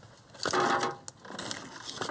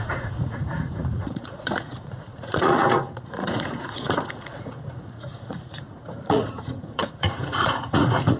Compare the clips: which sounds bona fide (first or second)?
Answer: first